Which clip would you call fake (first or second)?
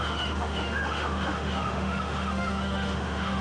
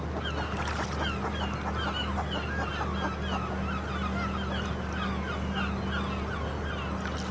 first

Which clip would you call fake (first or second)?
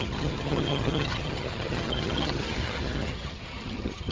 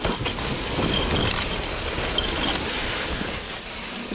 first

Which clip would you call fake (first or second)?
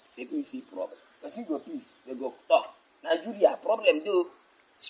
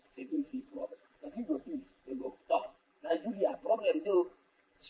second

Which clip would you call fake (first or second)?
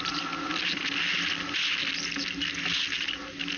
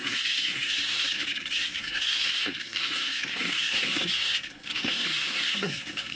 second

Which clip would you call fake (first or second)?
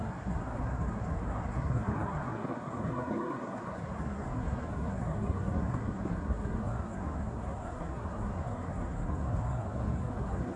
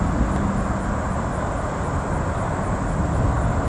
first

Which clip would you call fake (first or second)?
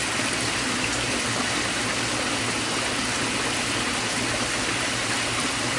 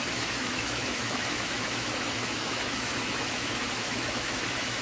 second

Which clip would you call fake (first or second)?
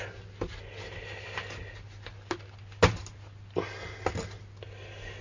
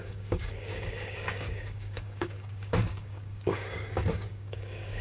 second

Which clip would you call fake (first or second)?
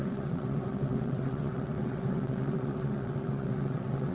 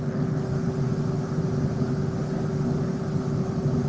first